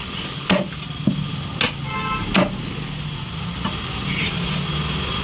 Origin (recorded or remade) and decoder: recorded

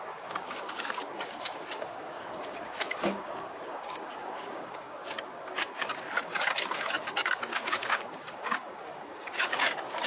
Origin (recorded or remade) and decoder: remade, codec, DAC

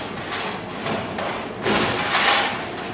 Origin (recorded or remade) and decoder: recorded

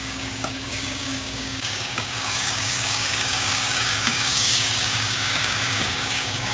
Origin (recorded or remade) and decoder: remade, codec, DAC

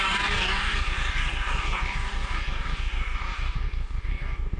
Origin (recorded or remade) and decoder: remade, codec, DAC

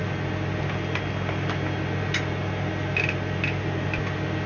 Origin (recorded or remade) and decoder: recorded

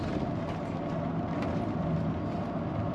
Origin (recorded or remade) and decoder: recorded